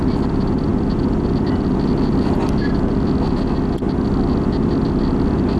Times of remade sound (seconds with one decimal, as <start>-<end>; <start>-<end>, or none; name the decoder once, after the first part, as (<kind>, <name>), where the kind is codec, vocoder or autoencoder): none